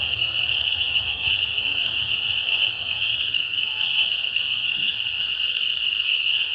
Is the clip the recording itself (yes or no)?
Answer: no